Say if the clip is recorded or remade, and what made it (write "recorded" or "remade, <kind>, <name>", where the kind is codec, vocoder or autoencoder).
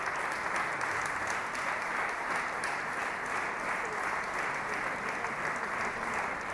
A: recorded